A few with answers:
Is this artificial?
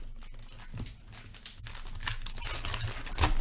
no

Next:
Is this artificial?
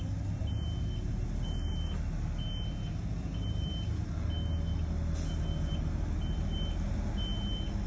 no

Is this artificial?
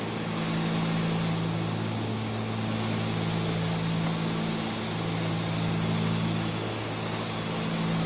no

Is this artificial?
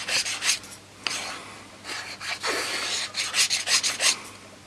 no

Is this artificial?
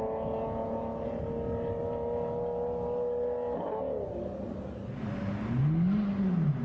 no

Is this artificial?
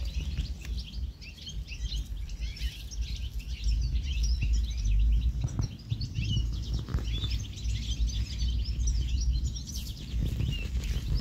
no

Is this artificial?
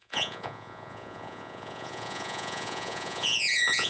yes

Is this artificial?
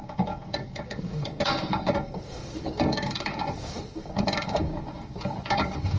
yes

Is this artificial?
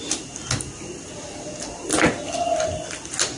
no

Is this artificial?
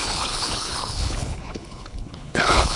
yes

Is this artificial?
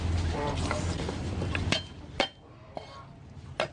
no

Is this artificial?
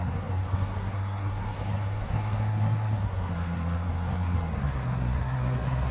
yes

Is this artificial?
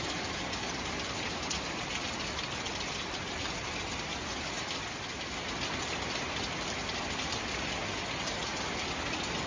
no